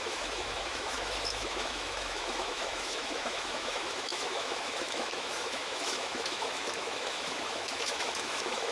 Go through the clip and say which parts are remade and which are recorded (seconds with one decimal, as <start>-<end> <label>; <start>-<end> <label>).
0.0-8.7 remade